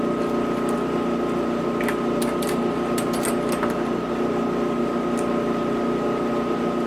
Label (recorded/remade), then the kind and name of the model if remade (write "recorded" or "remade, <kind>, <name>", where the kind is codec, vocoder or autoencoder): recorded